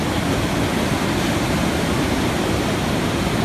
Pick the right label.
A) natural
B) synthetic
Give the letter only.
A